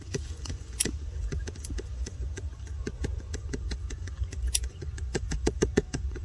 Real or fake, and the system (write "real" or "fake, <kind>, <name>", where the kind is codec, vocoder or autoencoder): fake, vocoder, Vocos